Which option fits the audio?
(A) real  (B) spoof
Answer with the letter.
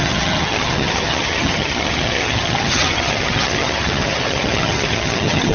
B